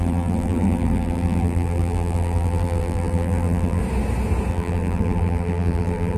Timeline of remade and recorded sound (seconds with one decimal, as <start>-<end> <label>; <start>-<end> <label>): 0.0-3.8 remade; 3.8-4.5 recorded; 4.5-6.2 remade

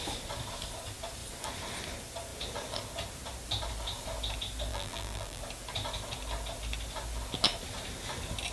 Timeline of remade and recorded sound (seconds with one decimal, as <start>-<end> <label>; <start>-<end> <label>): 0.0-4.7 recorded; 4.7-5.4 remade; 5.4-8.5 recorded